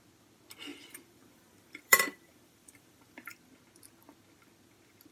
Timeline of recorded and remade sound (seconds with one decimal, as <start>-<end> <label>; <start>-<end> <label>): 0.0-0.7 recorded; 0.7-3.3 remade; 3.3-5.1 recorded